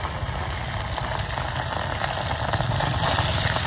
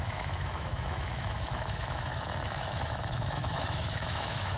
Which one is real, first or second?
first